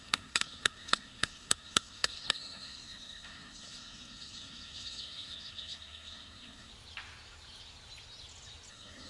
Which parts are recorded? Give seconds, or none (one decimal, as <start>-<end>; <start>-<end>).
6.7-8.7

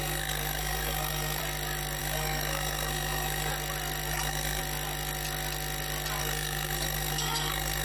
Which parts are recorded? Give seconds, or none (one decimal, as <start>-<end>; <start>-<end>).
1.4-2.0; 3.5-4.1; 4.6-6.2